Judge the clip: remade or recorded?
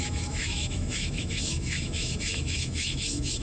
remade